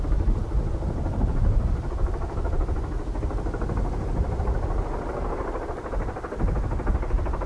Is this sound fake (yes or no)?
no